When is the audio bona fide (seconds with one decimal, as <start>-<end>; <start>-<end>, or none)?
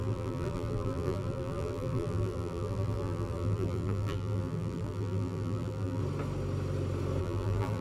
6.0-7.2